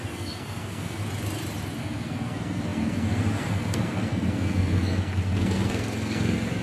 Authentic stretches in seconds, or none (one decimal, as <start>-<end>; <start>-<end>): 1.0-1.8